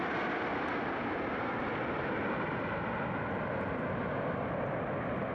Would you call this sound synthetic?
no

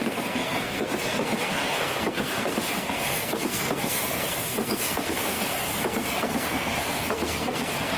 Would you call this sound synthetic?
yes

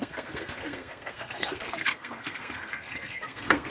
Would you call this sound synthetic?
yes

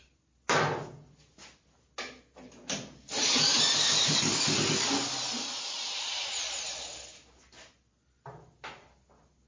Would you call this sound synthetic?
no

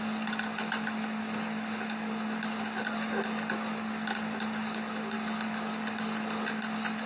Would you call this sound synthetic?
no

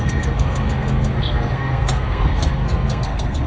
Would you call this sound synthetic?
yes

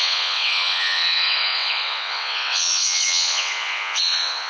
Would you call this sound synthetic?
yes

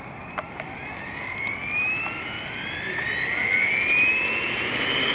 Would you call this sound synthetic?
no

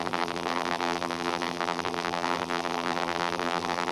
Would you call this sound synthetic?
yes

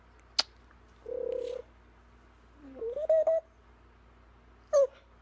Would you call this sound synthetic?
no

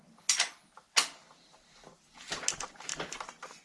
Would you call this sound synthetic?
no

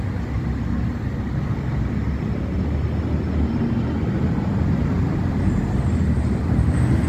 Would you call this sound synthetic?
no